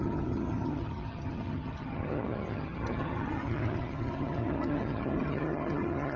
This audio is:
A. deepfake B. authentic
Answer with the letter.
A